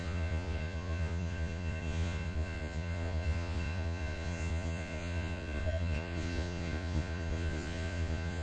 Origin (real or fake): fake